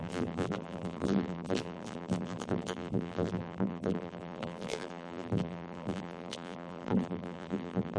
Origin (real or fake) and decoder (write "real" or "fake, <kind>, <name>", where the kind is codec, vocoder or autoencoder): fake, vocoder, BigVGAN v2